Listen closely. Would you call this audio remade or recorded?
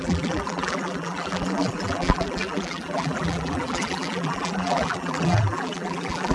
remade